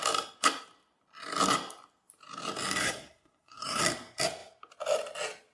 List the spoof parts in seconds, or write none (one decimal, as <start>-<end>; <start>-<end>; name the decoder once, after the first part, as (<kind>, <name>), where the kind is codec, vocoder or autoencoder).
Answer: 2.8-3.8 (codec, SNAC)